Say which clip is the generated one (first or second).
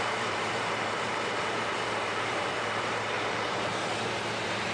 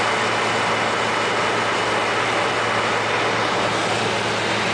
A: first